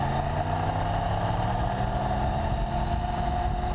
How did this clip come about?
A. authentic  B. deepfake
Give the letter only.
A